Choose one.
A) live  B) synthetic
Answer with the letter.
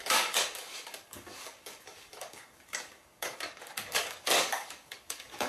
B